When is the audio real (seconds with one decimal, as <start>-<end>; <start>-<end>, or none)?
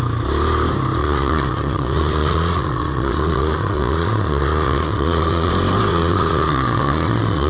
0.0-1.0; 5.5-5.9